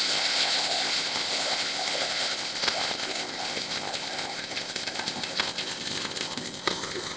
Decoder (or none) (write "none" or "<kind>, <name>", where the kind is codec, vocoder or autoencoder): codec, ZipCodec